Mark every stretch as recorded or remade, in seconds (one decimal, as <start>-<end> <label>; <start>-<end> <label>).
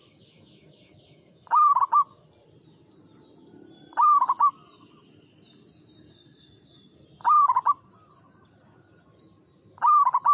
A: 0.0-1.8 remade; 1.8-10.3 recorded